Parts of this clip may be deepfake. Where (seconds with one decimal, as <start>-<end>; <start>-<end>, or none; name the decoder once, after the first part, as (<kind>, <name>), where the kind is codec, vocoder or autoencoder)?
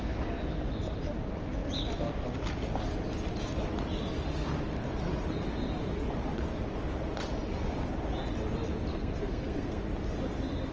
8.9-9.8 (codec, SNAC)